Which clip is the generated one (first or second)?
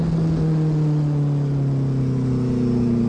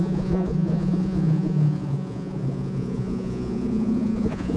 second